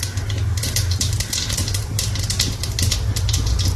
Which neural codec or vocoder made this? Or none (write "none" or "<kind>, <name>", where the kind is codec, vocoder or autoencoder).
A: none